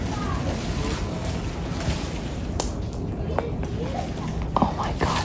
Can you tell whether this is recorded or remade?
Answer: recorded